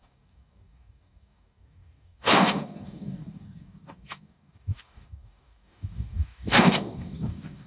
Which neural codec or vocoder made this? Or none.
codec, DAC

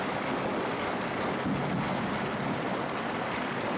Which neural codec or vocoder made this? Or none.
none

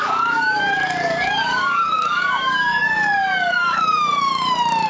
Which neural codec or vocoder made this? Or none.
codec, DAC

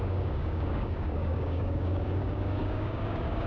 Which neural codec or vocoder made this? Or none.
codec, DAC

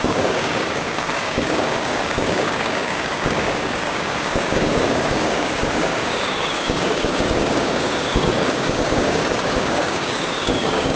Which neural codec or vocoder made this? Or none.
codec, DAC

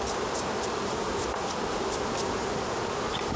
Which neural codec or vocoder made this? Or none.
none